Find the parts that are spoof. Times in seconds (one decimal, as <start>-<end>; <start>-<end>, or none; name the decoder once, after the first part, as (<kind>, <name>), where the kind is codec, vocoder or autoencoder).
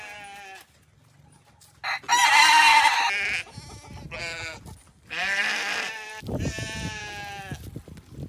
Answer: 4.2-7.1 (vocoder, BigVGAN v2)